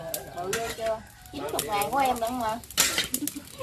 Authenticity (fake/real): real